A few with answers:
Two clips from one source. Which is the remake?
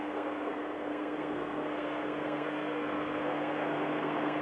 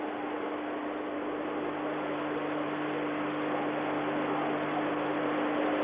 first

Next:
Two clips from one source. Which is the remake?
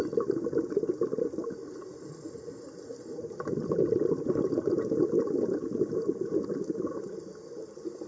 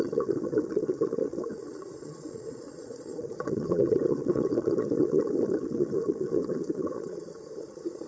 second